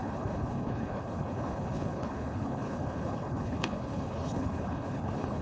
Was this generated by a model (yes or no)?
yes